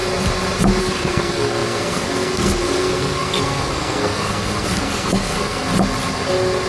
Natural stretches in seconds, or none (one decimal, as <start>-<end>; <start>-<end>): 0.0-0.8; 5.7-6.7